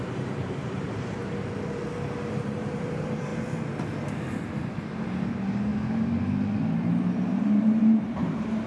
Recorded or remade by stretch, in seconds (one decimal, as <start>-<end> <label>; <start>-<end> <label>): 0.0-1.2 remade; 1.2-2.2 recorded; 2.2-3.3 remade; 3.3-5.1 recorded; 5.1-5.7 remade; 5.7-7.4 recorded; 7.4-8.7 remade